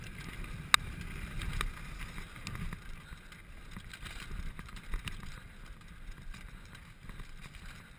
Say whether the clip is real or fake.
real